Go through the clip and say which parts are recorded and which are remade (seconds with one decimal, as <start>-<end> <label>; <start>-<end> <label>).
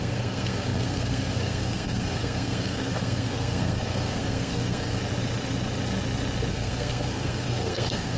0.0-5.0 remade; 5.0-6.5 recorded; 6.5-8.2 remade